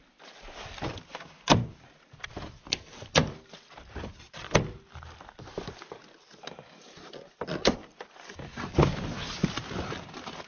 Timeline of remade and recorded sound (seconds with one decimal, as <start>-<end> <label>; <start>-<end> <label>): 0.0-10.5 remade